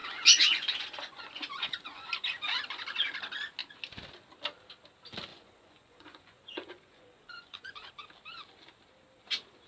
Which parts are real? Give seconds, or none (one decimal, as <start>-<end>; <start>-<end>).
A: 2.1-5.3; 7.9-9.7